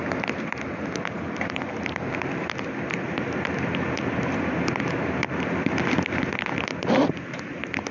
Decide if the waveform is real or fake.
real